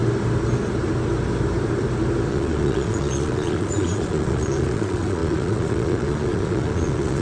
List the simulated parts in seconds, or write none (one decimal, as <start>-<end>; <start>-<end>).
2.3-7.2